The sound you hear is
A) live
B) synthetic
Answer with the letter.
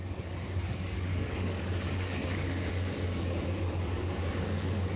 B